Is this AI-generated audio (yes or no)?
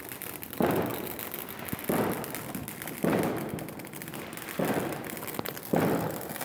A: no